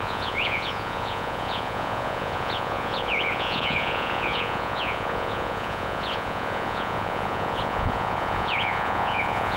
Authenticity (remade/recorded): remade